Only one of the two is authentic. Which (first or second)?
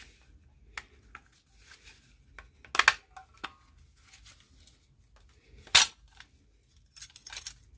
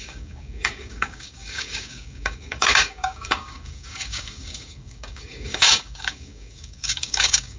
first